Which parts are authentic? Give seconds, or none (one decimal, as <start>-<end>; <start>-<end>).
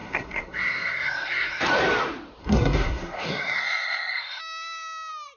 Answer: 1.6-2.4; 4.4-5.4